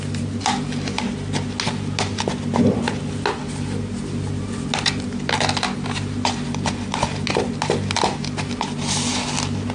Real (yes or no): yes